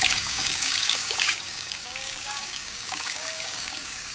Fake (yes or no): yes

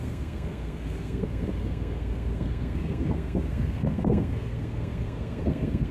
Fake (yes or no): yes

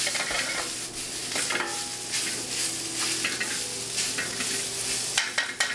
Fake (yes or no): no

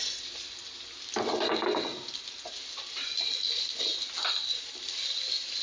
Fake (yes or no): no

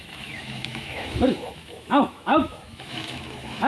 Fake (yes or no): yes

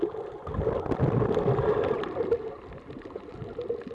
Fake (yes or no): no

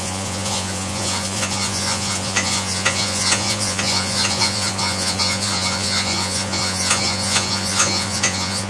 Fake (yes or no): yes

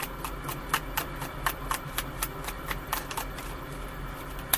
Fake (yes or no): no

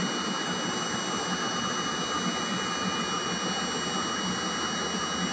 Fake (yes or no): no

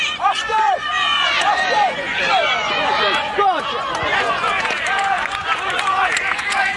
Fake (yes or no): yes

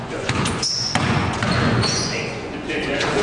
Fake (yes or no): yes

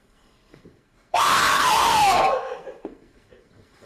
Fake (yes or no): yes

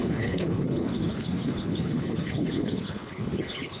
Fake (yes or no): yes